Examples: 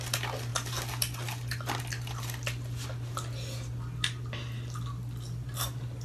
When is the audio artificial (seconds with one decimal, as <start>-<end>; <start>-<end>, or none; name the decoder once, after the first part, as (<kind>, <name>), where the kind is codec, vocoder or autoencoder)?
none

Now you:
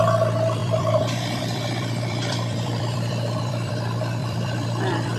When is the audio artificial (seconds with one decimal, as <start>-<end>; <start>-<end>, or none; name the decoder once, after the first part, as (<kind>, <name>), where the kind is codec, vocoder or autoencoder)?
0.6-3.7 (vocoder, BigVGAN v2); 4.2-5.2

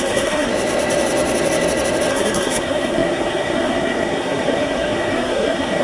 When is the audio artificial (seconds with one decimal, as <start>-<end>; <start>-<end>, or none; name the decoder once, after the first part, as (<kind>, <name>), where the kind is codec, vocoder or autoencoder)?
0.0-0.5 (codec, SNAC); 2.1-5.8